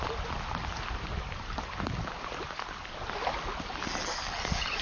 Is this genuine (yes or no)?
yes